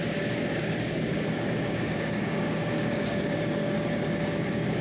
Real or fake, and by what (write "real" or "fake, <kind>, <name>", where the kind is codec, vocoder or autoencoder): fake, codec, DAC